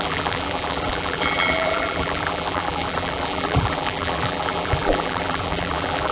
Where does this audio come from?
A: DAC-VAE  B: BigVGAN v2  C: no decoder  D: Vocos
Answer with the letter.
B